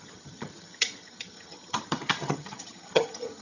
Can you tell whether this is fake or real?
fake